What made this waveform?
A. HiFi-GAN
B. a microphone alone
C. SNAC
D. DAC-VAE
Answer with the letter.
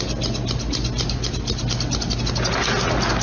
B